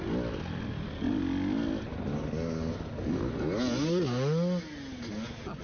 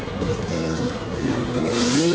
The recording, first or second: first